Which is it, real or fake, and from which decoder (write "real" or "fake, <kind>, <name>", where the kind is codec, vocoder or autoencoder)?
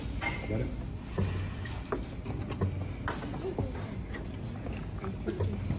real